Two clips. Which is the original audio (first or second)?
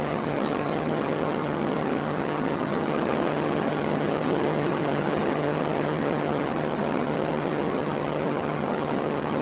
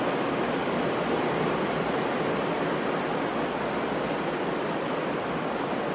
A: second